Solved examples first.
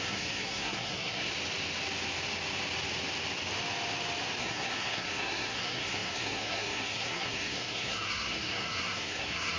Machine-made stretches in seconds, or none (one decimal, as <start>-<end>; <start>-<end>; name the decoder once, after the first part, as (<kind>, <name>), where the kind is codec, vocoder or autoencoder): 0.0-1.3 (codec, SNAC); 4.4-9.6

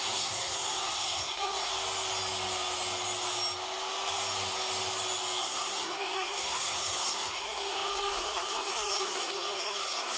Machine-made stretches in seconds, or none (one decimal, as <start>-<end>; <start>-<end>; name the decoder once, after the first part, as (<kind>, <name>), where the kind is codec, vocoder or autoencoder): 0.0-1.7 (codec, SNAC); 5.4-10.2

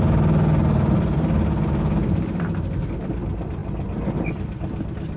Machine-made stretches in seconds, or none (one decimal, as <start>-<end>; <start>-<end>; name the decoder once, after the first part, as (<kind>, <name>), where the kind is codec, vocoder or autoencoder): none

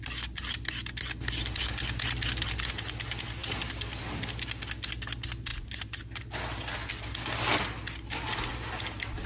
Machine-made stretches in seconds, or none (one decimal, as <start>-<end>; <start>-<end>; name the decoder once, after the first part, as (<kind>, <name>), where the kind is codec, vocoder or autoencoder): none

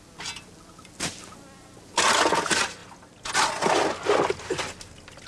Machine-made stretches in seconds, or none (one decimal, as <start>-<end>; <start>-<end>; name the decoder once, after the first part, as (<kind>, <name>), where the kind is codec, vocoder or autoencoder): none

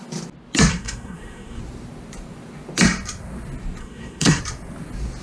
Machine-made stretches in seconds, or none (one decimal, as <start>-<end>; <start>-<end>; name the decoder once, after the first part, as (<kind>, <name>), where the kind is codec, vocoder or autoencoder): 0.7-1.6 (codec, SNAC); 3.8-4.4

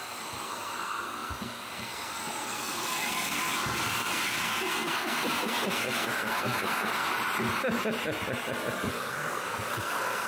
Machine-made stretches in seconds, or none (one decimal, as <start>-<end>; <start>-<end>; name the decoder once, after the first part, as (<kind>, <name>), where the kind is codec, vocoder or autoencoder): 0.0-7.1 (codec, SNAC); 8.9-10.3

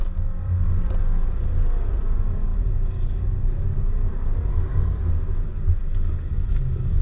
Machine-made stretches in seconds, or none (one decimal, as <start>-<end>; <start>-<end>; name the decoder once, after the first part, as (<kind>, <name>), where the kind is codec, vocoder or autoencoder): 4.5-5.1 (codec, SNAC)